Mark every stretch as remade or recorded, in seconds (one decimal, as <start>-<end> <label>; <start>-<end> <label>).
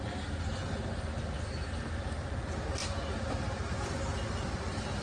0.0-5.0 recorded